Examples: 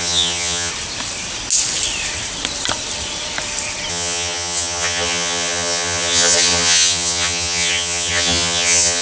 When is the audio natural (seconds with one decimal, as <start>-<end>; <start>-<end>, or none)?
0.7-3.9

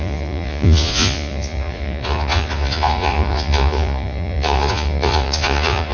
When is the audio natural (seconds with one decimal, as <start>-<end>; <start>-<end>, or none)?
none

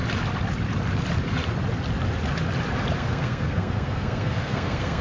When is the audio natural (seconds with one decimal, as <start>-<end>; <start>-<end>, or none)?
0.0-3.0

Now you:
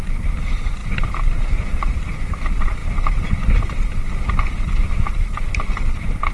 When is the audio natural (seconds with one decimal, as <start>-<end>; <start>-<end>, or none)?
0.0-6.3

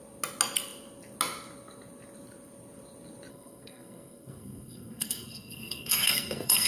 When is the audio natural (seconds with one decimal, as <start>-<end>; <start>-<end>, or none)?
0.0-3.3